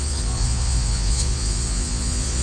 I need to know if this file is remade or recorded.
remade